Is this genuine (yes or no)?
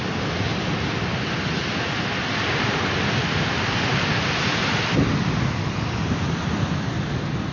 yes